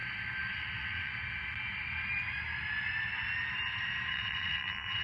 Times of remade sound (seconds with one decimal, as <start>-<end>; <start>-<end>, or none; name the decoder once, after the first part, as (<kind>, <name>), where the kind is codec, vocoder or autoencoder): 0.5-1.1 (vocoder, WaveNeXt); 4.1-5.0